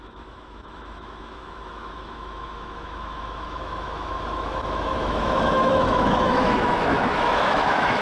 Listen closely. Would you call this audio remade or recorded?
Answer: remade